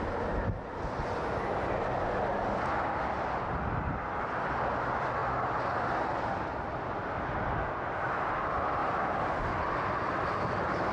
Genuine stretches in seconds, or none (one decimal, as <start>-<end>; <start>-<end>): 0.0-10.9